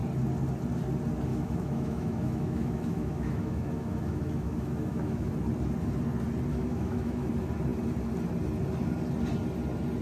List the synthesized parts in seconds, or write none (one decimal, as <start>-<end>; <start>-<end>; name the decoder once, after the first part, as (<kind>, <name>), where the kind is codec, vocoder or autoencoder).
1.3-5.3 (autoencoder, DAC-VAE); 6.5-7.3